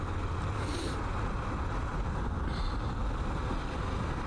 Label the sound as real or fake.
real